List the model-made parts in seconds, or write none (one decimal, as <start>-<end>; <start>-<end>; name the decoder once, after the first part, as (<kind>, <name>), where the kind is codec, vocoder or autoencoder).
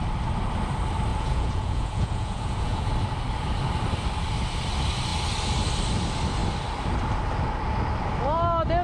1.1-2.9 (vocoder, Vocos)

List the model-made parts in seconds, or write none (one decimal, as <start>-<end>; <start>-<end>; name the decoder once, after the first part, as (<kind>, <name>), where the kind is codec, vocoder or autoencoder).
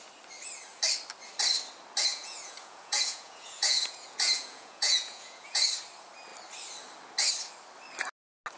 2.1-5.6 (vocoder, Vocos)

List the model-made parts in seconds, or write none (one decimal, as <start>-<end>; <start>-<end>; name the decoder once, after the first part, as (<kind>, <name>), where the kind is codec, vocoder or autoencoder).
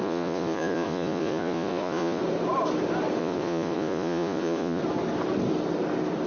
0.0-2.2 (vocoder, Vocos); 3.2-4.8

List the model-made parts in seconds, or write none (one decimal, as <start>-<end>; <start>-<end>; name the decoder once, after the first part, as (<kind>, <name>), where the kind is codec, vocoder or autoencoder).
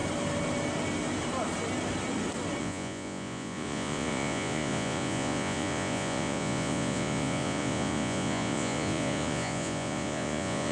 2.6-10.7 (vocoder, Vocos)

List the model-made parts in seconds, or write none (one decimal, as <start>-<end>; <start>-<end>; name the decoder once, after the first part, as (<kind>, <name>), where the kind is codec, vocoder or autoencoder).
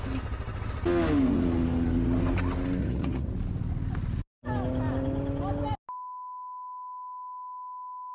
2.8-3.3 (vocoder, Vocos)